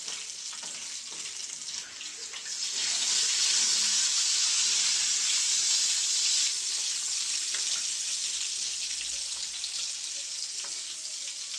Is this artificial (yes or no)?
no